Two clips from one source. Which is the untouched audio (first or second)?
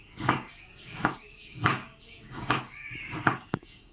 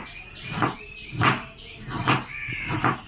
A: second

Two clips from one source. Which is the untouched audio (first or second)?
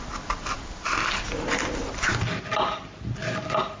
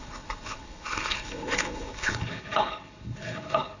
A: first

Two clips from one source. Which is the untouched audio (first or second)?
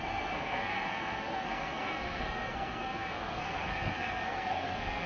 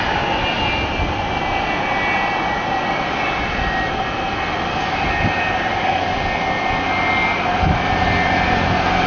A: second